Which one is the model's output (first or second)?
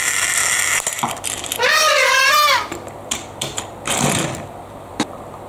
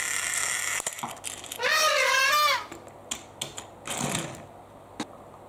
first